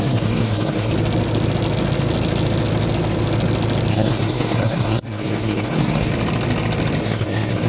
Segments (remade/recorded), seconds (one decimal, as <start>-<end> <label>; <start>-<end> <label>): 0.0-0.9 remade; 0.9-3.9 recorded; 3.9-6.1 remade; 6.1-7.0 recorded; 7.0-7.7 remade